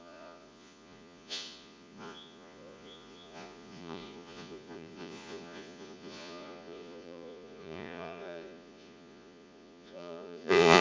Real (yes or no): no